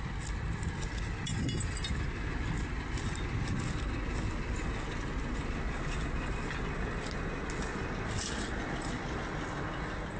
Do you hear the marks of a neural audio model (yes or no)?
no